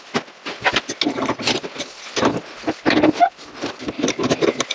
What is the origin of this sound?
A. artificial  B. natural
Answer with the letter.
B